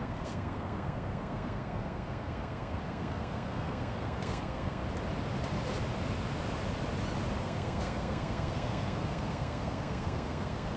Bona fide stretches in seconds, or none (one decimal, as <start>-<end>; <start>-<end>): 4.8-7.4